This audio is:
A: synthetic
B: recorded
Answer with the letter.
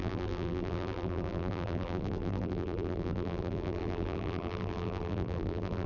A